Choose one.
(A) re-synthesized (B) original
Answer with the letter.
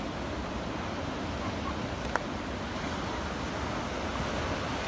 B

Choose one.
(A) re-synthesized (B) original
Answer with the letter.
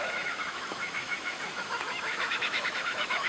A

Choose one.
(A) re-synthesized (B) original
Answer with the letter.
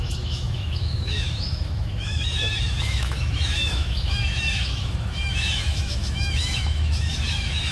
A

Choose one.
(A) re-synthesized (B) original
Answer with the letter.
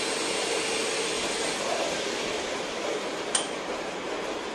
A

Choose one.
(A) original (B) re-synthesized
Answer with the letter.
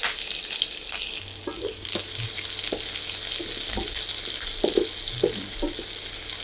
A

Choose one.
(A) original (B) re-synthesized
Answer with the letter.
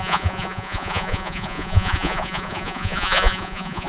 B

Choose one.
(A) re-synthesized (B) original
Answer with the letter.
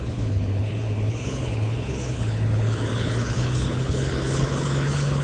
A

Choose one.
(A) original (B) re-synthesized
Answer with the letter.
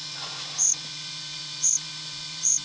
B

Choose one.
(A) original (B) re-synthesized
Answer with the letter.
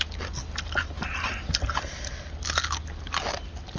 A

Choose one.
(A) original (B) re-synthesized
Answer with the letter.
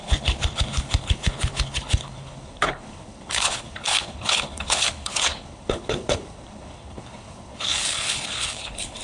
B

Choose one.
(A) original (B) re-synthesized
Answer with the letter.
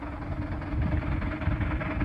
A